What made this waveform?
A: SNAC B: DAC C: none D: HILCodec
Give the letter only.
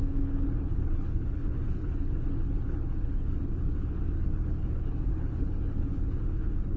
D